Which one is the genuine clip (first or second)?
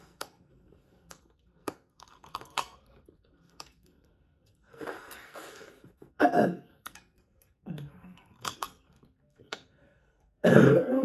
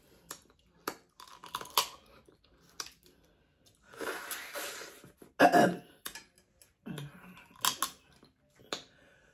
second